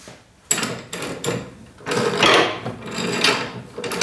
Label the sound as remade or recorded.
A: recorded